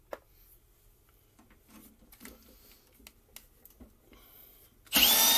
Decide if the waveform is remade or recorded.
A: recorded